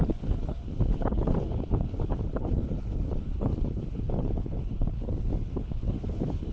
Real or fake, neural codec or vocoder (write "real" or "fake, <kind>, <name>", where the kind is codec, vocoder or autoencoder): fake, codec, HILCodec